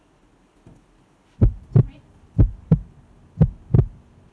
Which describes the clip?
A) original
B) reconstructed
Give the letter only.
A